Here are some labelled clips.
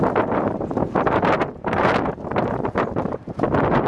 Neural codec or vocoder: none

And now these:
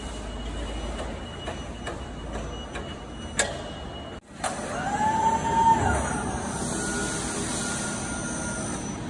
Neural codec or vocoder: none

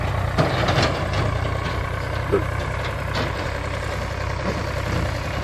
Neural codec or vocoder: none